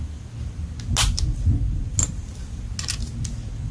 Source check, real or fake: real